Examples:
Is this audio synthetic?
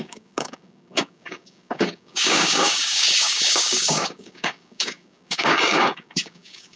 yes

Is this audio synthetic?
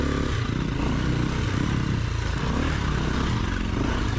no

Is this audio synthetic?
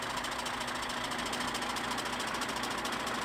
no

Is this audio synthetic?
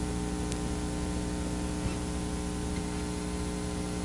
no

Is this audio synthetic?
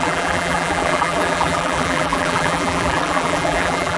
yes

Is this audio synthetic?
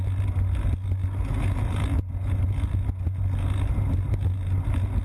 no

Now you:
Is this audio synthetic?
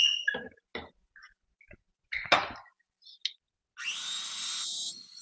no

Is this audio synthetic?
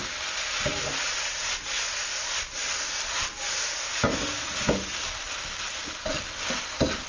no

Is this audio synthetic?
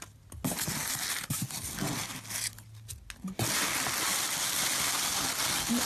no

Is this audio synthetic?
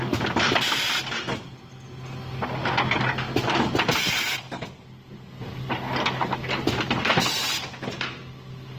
no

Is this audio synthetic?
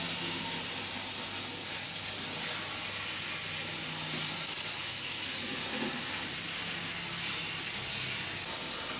no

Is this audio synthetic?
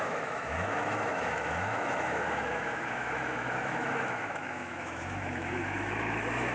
yes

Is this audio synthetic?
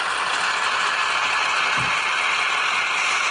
no